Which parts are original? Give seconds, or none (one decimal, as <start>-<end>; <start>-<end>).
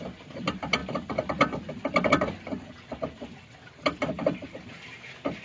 0.0-5.4